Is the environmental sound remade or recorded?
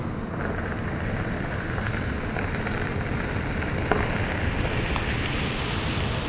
recorded